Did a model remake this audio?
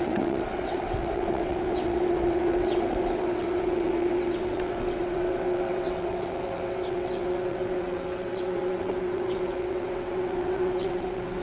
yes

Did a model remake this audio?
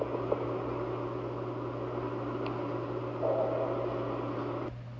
no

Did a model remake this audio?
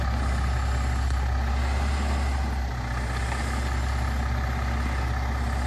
no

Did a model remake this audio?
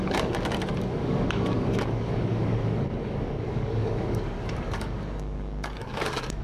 yes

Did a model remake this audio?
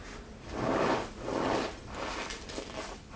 no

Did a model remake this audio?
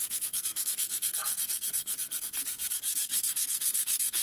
yes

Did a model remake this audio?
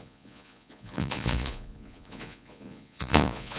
yes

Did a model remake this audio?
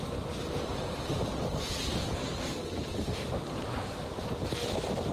no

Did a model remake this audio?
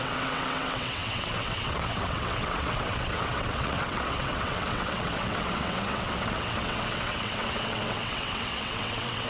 yes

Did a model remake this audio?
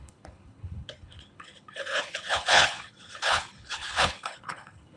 yes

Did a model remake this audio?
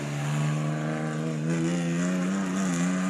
no